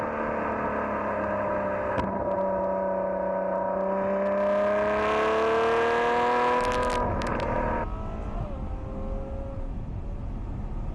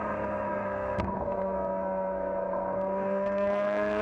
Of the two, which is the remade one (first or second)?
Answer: second